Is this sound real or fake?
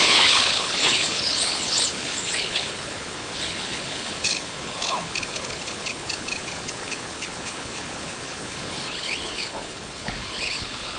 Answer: fake